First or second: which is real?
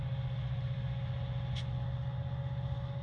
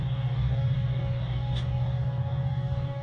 first